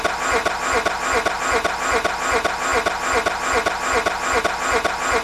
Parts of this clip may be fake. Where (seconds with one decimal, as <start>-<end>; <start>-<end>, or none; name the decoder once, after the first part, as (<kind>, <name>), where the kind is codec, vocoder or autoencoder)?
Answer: none